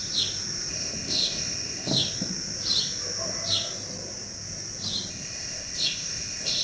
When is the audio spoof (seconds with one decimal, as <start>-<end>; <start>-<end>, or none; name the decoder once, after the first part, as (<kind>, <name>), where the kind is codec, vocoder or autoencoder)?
0.7-1.9 (codec, ZipCodec); 5.1-6.6